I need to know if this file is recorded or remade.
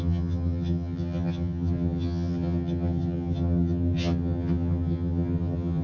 remade